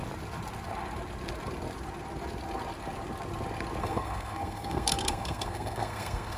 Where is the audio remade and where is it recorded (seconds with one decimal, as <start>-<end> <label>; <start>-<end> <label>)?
0.0-3.8 recorded; 3.8-6.4 remade